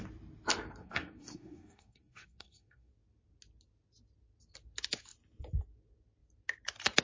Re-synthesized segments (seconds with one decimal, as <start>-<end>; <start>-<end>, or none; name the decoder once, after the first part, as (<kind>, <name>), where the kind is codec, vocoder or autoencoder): 0.8-2.9 (codec, SNAC)